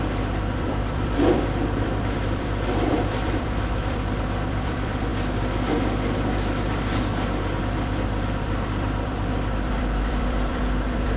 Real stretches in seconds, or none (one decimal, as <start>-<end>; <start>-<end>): 5.1-7.6